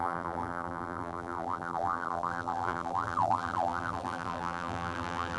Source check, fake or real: fake